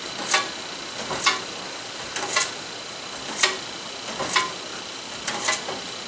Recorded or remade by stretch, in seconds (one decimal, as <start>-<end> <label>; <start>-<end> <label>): 0.0-6.1 recorded